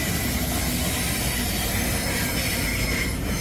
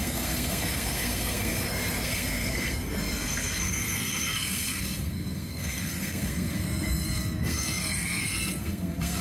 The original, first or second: first